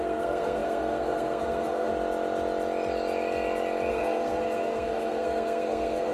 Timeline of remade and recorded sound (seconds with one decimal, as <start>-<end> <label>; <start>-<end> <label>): 0.0-1.9 remade; 1.9-3.9 recorded; 3.9-6.1 remade